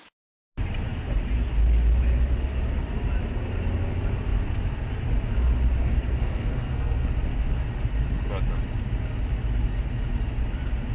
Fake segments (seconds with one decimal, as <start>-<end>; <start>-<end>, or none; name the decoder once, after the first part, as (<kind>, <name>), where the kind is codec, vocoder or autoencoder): 5.8-7.1 (codec, SNAC)